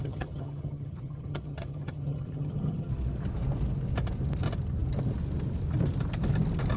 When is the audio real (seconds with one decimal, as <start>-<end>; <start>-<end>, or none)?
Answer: 2.9-6.8